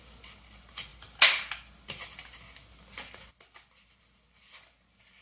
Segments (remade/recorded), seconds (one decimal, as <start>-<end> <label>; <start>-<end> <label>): 0.0-5.2 recorded